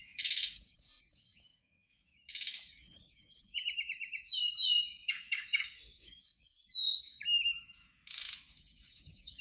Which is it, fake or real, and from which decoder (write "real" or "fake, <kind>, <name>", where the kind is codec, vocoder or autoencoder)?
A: fake, autoencoder, DAC-VAE